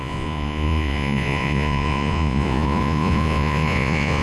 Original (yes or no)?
no